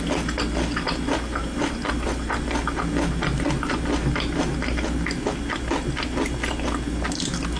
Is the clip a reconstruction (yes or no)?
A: no